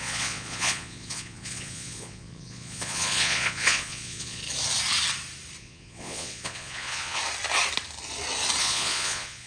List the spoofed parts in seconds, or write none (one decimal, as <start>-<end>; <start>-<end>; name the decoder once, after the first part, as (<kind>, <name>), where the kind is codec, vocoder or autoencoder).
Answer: 0.0-4.4 (vocoder, Vocos); 5.6-7.2; 8.6-9.5